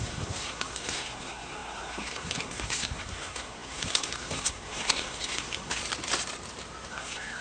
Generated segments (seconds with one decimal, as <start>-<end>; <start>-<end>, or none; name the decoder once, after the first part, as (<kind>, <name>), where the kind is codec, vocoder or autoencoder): 0.0-5.8 (codec, SNAC); 6.9-7.4